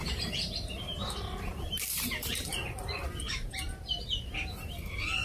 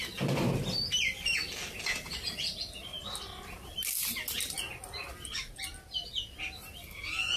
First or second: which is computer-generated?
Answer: first